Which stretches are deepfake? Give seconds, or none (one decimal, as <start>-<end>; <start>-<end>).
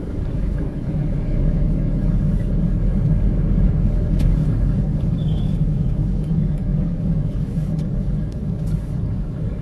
0.0-9.6